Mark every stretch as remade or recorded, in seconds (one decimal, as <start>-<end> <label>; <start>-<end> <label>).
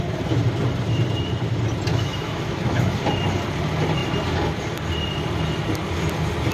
0.0-1.9 recorded; 1.9-2.9 remade; 2.9-6.5 recorded